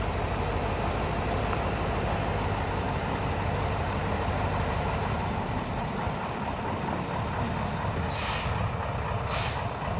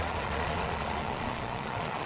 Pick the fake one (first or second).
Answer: second